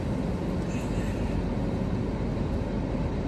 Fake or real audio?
real